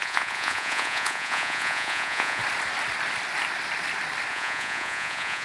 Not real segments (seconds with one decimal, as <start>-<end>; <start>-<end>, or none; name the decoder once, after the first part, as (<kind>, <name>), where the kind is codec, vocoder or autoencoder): 0.0-2.4 (vocoder, Vocos); 4.3-5.4